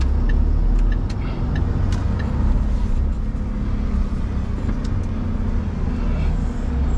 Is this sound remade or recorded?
recorded